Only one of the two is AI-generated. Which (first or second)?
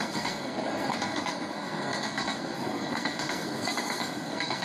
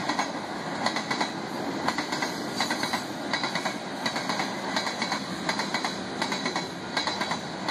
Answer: first